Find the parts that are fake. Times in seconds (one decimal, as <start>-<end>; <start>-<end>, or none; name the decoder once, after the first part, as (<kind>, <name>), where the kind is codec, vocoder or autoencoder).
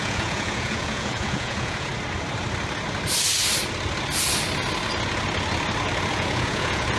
0.0-1.9 (vocoder, Vocos); 6.1-7.0